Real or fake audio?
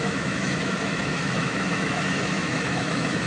fake